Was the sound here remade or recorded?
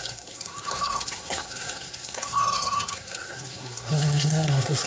remade